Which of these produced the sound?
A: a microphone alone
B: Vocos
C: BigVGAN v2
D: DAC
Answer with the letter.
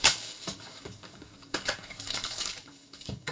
D